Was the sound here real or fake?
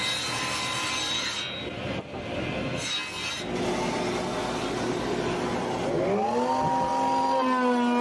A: real